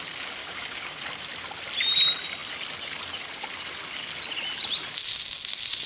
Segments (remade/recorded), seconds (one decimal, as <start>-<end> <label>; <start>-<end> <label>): 0.0-0.4 recorded; 0.4-1.0 remade; 1.0-5.9 recorded

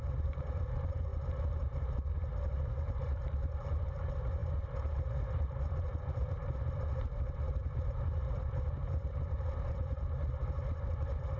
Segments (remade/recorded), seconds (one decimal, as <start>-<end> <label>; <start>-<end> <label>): 0.0-1.1 remade; 1.1-2.4 recorded; 2.4-11.4 remade

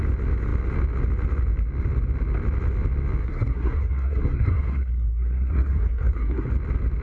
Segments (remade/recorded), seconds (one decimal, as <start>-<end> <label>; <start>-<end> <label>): 0.0-3.2 recorded; 3.2-6.5 remade; 6.5-7.0 recorded